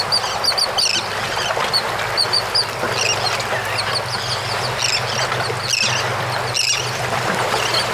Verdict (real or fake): real